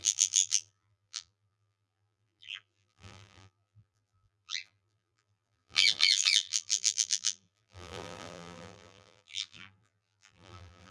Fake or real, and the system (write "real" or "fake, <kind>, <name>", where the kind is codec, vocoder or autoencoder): fake, vocoder, BigVGAN v2